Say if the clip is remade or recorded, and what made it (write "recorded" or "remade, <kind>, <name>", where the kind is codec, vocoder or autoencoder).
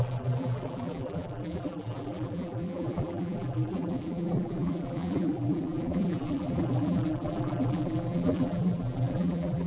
remade, vocoder, BigVGAN v2